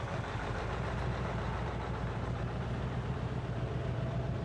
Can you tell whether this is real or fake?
fake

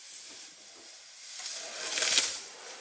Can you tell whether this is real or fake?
real